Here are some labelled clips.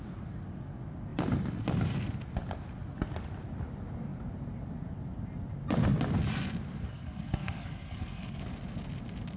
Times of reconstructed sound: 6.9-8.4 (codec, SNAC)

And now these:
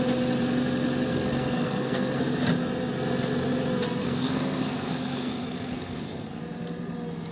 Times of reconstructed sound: 1.1-2.2 (codec, SNAC); 4.0-6.4

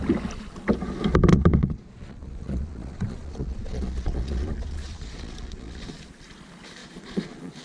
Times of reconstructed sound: 1.3-5.9 (vocoder, Vocos); 6.8-7.6

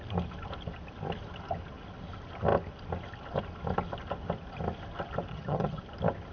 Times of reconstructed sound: 5.3-5.8 (vocoder, HiFi-GAN)

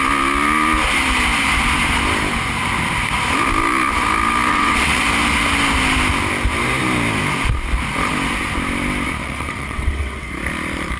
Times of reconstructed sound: 4.5-5.0 (vocoder, WaveNeXt); 9.2-10.3

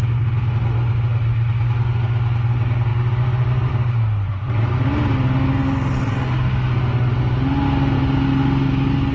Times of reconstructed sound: none